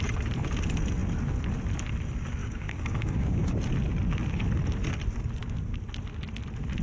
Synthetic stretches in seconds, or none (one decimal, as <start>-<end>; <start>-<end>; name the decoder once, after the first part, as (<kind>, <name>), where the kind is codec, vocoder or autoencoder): 2.4-3.5 (codec, DAC)